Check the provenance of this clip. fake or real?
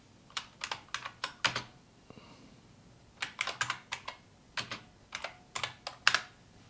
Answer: real